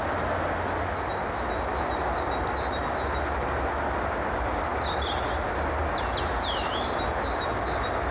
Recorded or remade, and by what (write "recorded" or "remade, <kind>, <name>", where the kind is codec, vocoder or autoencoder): recorded